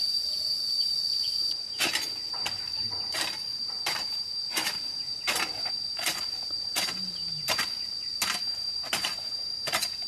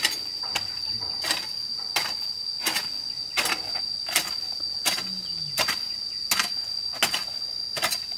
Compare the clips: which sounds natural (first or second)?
second